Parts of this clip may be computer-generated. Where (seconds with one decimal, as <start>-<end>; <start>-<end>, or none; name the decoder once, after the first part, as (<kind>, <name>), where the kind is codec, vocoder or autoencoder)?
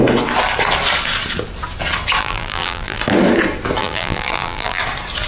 2.2-3.0 (vocoder, BigVGAN v2); 3.8-4.8